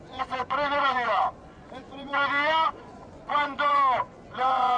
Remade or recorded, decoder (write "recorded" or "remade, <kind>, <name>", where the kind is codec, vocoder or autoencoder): remade, vocoder, Vocos